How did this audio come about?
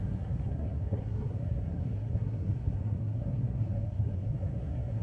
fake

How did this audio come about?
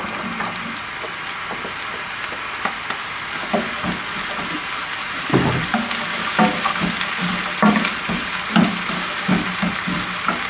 real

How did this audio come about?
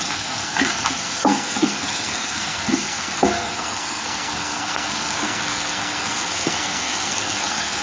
fake